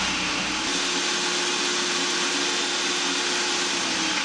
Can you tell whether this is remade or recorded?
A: recorded